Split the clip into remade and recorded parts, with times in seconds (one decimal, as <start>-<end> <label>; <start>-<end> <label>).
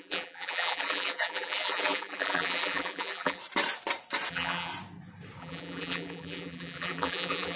0.0-3.4 remade; 3.4-4.3 recorded; 4.3-4.7 remade; 4.7-5.4 recorded; 5.4-7.6 remade